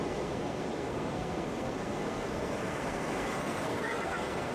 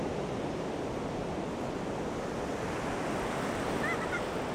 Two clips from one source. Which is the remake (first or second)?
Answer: first